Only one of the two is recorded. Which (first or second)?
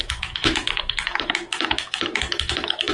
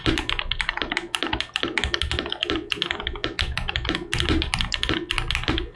second